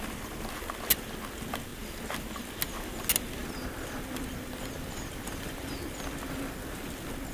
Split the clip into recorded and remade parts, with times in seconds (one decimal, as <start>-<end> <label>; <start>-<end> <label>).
0.0-7.3 recorded